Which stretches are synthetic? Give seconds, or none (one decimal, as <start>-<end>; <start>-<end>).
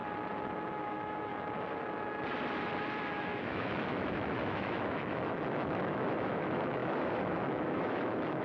0.7-1.3; 3.2-8.4